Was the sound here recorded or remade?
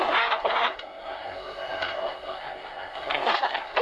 remade